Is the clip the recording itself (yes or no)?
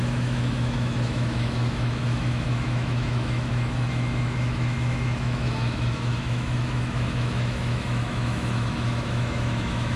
no